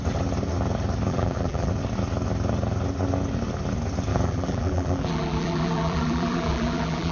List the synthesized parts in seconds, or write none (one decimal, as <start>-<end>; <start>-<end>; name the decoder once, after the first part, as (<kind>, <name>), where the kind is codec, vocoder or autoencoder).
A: 1.1-1.7 (vocoder, BigVGAN v2); 4.1-7.1